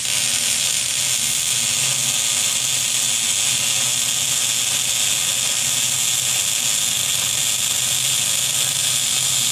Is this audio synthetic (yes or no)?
no